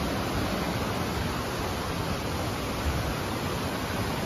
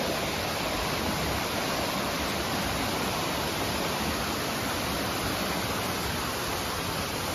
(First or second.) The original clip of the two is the first